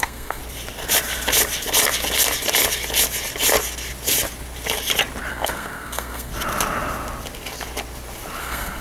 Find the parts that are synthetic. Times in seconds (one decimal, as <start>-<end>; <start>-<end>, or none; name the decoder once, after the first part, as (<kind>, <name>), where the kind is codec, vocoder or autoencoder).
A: 0.0-0.4 (codec, SNAC); 5.3-6.3; 8.4-8.8